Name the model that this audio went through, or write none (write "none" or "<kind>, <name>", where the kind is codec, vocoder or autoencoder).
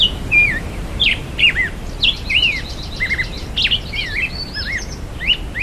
none